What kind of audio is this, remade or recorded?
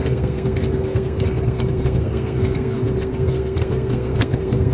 remade